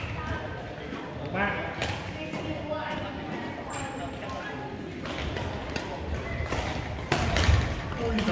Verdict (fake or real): real